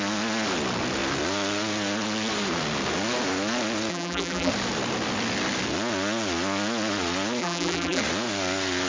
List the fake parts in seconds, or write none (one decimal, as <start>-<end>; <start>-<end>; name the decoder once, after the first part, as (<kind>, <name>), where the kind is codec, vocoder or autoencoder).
3.9-4.5 (vocoder, BigVGAN v2); 7.4-8.0